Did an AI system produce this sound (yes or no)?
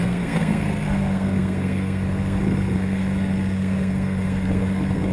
yes